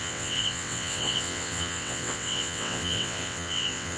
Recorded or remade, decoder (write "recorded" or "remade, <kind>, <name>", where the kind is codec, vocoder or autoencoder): remade, vocoder, WaveNeXt